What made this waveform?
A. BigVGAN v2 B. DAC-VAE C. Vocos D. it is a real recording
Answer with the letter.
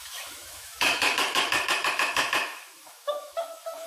B